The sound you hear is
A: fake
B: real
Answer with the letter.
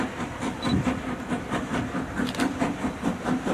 B